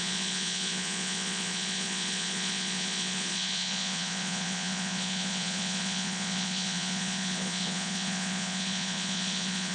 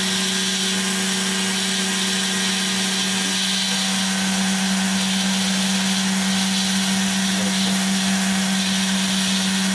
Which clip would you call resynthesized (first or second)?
first